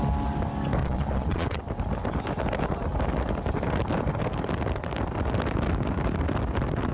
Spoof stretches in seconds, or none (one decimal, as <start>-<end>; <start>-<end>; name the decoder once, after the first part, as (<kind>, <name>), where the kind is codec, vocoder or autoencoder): 0.8-1.6 (vocoder, Vocos)